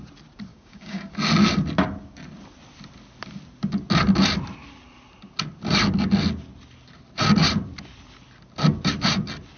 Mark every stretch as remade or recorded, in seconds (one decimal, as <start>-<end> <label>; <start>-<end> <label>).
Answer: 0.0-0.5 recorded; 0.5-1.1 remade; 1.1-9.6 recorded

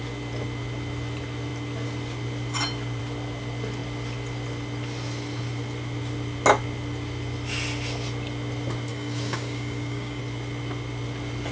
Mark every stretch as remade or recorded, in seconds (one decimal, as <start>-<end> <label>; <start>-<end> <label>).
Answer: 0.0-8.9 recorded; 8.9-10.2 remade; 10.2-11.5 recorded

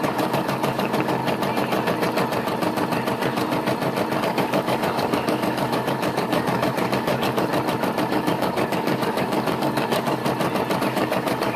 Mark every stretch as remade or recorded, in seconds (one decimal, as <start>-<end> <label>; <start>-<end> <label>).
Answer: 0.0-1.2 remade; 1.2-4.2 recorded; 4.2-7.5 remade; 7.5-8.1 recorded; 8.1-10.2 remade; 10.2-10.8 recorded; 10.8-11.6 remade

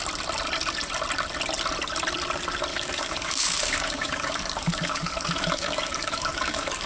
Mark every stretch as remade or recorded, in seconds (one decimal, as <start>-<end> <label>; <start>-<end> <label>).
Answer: 0.0-2.7 recorded; 2.7-6.9 remade

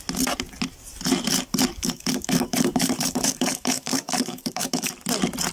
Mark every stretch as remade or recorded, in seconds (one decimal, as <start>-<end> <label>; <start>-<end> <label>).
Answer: 0.0-1.7 recorded; 1.7-4.9 remade; 4.9-5.5 recorded

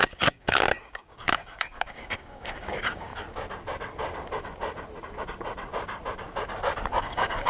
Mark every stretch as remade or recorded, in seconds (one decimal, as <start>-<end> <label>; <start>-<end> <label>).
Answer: 0.0-3.1 remade; 3.1-7.0 recorded; 7.0-7.5 remade

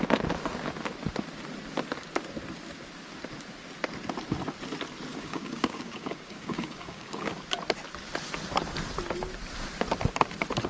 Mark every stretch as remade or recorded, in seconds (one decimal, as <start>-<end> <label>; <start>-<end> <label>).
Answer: 0.0-5.1 recorded; 5.1-7.3 remade; 7.3-10.7 recorded